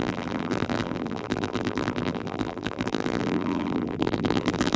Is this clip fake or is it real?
fake